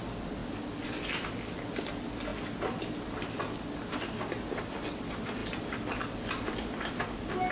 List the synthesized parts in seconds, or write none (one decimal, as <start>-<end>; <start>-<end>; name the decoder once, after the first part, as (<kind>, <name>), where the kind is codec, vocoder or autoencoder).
none